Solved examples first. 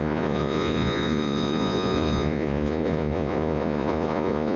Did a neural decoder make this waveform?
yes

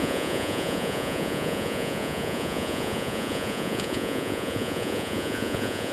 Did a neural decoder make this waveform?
yes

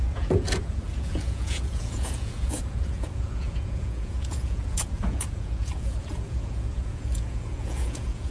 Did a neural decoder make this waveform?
yes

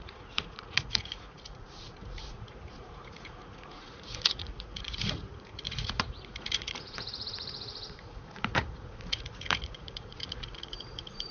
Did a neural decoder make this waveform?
yes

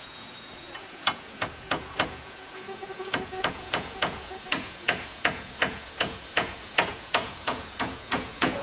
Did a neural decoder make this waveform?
yes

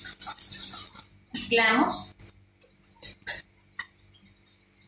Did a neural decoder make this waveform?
no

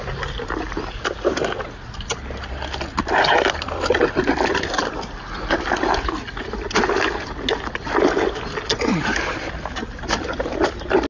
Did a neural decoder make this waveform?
no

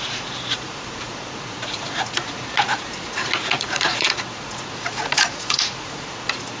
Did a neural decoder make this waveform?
yes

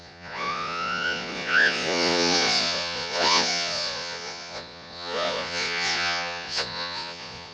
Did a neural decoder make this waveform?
yes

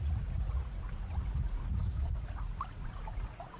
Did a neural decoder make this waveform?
yes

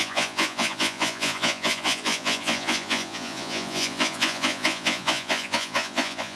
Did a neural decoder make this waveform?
yes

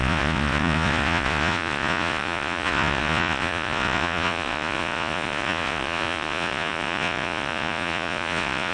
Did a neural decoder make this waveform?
yes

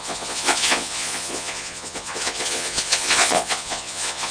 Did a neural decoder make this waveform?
yes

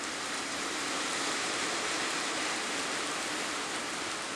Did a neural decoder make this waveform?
no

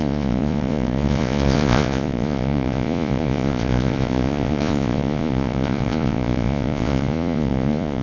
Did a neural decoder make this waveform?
yes